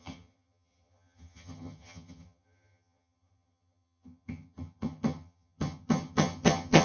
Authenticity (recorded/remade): remade